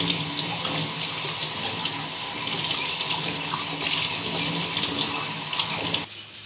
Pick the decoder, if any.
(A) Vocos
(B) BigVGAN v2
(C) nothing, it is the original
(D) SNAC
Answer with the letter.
C